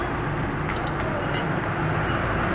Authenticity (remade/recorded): recorded